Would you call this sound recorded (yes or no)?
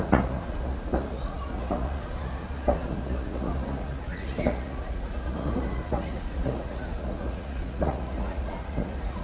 no